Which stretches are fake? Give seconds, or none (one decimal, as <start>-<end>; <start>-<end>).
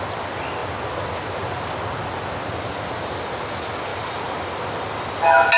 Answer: 3.9-4.5